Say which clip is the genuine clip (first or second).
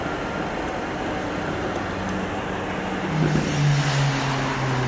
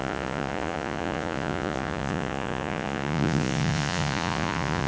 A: first